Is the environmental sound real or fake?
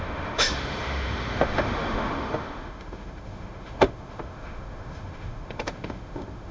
fake